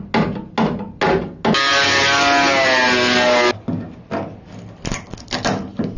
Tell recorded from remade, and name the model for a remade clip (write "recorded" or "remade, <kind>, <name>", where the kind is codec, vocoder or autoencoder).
recorded